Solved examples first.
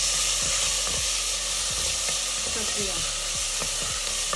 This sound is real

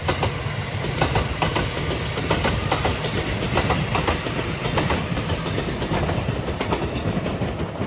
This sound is real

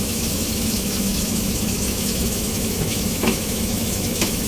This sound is fake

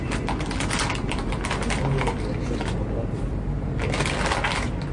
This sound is real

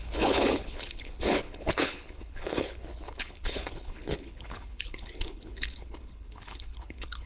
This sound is fake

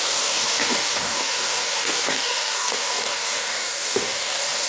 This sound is fake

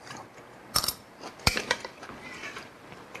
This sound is fake